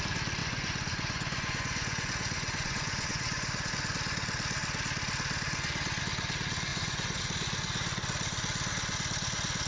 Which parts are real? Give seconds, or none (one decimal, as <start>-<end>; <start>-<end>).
0.0-0.4; 3.7-6.7; 7.2-9.7